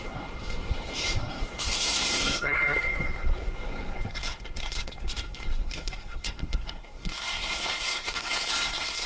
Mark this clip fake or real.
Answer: fake